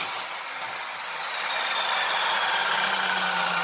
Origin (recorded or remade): recorded